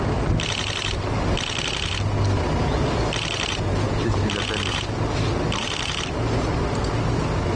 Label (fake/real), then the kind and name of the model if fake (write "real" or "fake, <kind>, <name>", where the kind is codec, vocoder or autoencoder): real